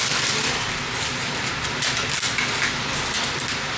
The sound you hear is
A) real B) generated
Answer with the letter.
A